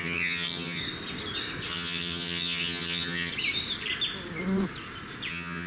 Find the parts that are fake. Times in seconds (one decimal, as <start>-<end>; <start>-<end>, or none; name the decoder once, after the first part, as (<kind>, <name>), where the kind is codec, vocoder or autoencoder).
0.0-0.8 (vocoder, HiFi-GAN); 1.7-3.3; 5.3-5.7